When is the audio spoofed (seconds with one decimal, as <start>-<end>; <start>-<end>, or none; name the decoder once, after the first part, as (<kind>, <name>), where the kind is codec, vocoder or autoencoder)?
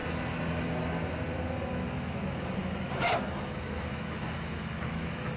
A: 1.7-5.4 (autoencoder, DAC-VAE)